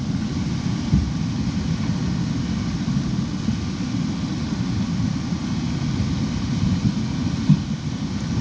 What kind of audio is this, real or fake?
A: real